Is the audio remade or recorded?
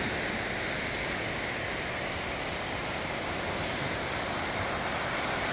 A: recorded